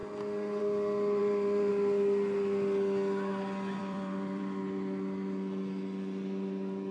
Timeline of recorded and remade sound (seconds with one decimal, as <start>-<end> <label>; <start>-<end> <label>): 0.0-1.2 recorded; 1.2-1.7 remade; 1.7-3.8 recorded; 3.8-6.9 remade